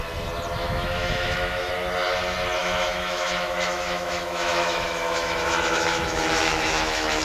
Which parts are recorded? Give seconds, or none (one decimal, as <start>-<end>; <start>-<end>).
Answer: 0.0-0.6; 1.7-2.6